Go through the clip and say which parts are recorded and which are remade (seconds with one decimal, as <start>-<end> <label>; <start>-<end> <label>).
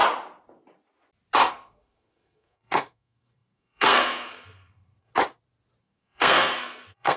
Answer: 0.0-1.5 recorded; 1.5-5.1 remade; 5.1-5.8 recorded; 5.8-7.2 remade